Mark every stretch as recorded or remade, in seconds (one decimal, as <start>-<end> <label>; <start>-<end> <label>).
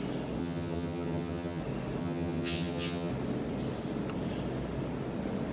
0.0-0.4 recorded; 0.4-1.6 remade; 1.6-2.0 recorded; 2.0-3.1 remade; 3.1-5.5 recorded